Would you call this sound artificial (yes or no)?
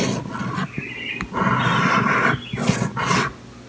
no